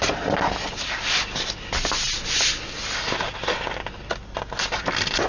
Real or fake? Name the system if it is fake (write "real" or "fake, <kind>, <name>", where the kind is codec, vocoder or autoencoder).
real